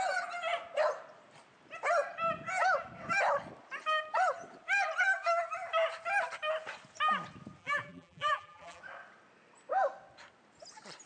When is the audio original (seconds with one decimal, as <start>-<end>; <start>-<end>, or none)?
0.0-7.6; 8.8-11.1